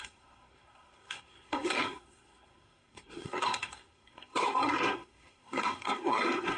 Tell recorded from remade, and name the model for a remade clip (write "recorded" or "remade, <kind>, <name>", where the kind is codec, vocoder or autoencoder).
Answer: remade, codec, SNAC